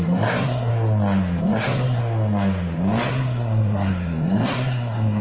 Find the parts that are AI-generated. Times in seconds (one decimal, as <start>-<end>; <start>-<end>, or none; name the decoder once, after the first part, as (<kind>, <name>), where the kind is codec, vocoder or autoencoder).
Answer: 0.0-0.7 (codec, SNAC); 1.4-2.0; 3.1-5.2